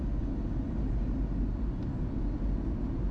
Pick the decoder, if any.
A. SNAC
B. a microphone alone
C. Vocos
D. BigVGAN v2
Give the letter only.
B